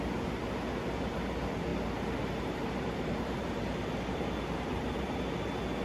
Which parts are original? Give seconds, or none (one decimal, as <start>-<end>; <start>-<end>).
0.0-1.7; 5.2-5.8